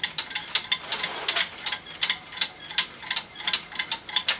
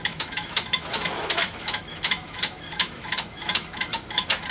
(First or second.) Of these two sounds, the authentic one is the first